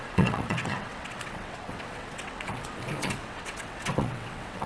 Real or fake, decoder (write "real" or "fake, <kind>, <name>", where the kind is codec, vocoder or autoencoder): fake, vocoder, WaveNeXt